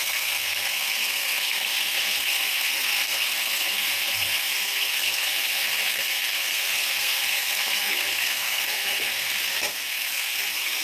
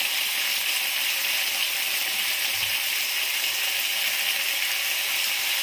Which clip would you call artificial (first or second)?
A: first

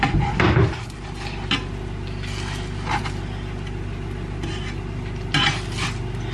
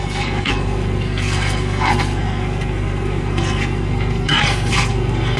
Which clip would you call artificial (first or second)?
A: second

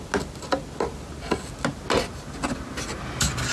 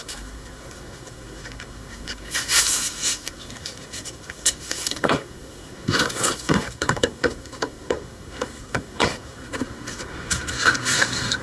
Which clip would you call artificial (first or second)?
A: second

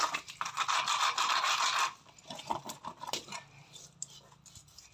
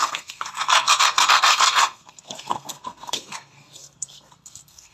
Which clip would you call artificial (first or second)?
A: second